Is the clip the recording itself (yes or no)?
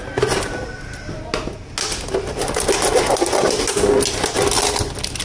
yes